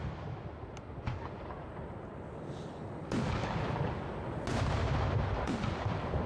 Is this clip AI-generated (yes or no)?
no